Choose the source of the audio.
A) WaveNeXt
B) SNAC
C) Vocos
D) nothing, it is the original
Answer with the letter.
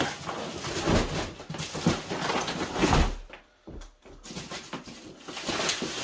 D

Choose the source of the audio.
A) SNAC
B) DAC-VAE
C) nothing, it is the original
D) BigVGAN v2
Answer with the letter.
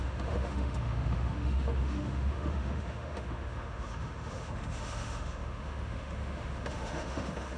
B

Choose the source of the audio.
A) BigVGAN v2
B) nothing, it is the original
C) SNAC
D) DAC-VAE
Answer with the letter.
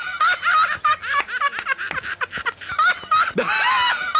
B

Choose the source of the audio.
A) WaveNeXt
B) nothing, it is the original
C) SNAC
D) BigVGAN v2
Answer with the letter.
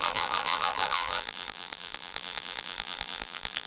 D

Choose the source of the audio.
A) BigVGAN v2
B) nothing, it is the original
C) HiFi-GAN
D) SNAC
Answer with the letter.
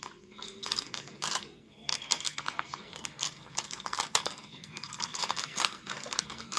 D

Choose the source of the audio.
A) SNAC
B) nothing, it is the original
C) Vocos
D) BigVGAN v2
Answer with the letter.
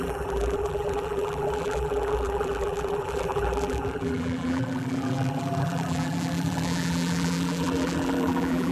D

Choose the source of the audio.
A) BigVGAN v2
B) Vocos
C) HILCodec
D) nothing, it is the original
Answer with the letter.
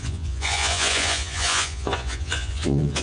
B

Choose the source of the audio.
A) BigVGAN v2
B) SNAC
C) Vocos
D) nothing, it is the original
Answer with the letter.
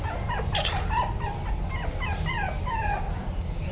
D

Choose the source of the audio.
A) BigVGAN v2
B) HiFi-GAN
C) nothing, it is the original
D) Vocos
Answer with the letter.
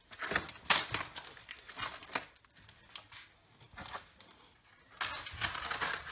C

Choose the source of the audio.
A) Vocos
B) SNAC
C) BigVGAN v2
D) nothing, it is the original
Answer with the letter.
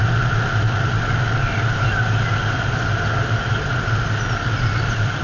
D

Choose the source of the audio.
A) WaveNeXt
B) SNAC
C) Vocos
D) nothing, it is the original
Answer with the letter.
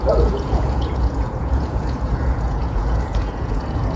C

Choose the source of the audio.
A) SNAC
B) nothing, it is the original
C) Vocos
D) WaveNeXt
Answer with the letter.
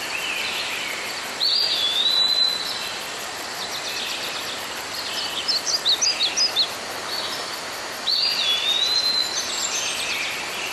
B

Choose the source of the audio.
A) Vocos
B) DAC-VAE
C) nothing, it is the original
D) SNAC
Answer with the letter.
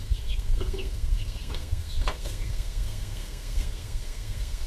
D